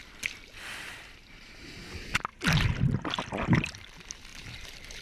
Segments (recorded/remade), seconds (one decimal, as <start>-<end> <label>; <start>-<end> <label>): 0.0-1.8 remade; 1.8-4.3 recorded; 4.3-5.0 remade